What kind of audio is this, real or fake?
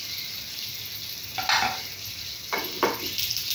real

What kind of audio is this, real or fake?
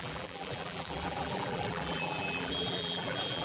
fake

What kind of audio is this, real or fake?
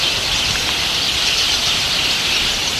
fake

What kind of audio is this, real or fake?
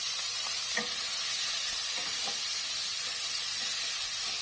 fake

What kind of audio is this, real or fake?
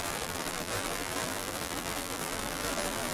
fake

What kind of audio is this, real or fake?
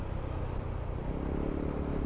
real